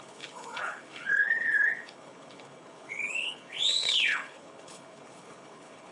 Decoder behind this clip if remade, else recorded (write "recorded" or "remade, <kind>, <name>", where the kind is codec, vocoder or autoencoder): remade, codec, HILCodec